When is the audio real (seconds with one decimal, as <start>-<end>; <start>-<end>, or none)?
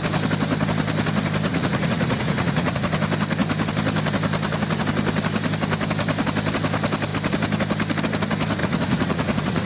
0.0-1.5; 2.9-8.6